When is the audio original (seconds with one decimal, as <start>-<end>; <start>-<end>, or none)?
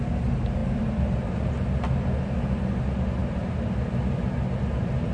3.2-4.3